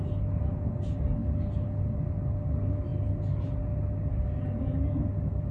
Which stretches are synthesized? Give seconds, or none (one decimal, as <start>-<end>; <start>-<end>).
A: none